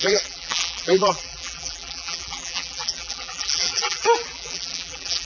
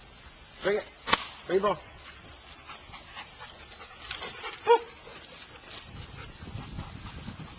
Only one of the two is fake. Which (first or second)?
first